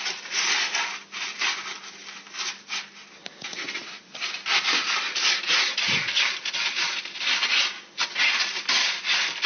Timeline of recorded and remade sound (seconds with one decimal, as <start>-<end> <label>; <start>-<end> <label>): 0.0-3.2 recorded; 3.2-4.1 remade; 4.1-9.5 recorded